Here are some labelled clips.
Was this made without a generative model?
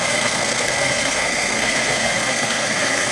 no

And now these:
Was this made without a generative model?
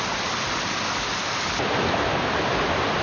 yes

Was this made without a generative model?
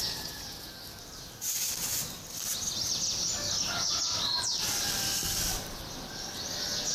yes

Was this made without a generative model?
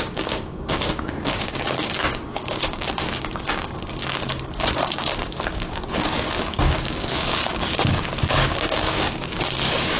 no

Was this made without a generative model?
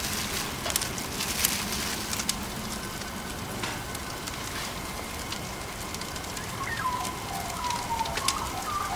yes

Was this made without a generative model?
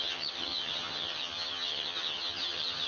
no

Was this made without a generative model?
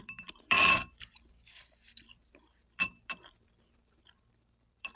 no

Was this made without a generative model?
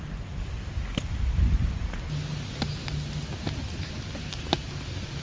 yes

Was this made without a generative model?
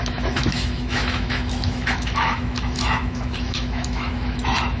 no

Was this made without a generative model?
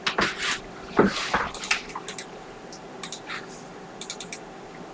yes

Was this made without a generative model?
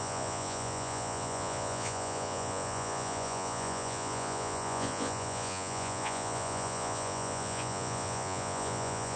no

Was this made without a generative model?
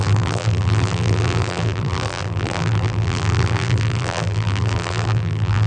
no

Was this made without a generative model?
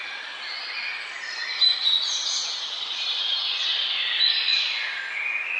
yes